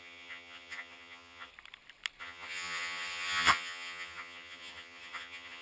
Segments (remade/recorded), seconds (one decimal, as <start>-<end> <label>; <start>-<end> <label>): 0.0-1.5 remade; 1.5-2.2 recorded; 2.2-5.6 remade